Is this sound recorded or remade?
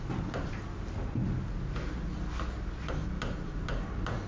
recorded